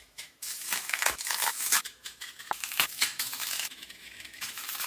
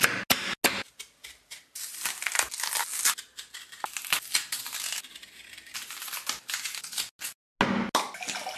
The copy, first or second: first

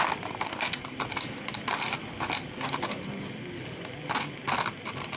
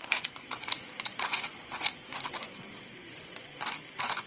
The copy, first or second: second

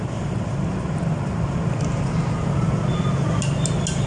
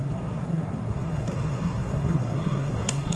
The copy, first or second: second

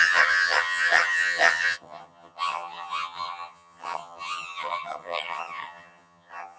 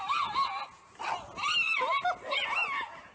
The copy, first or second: first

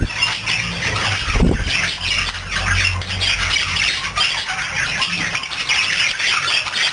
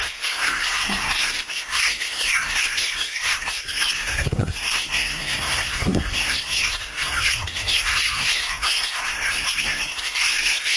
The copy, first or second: second